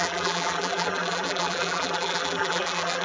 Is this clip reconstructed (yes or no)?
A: yes